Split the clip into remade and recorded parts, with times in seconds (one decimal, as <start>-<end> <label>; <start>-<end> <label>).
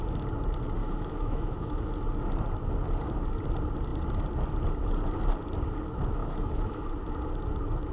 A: 0.0-0.8 recorded; 0.8-1.8 remade; 1.8-6.2 recorded; 6.2-6.9 remade; 6.9-7.9 recorded